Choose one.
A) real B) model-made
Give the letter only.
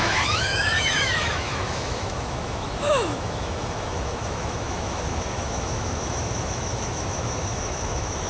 B